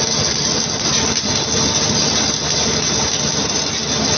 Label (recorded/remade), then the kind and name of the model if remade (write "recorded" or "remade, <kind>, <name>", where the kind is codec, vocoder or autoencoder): recorded